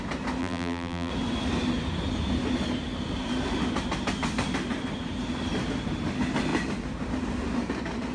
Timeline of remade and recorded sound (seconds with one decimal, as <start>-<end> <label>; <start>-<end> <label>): 0.0-0.4 recorded; 0.4-1.1 remade; 1.1-8.1 recorded